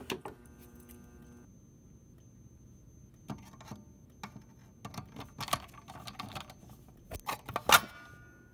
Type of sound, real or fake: real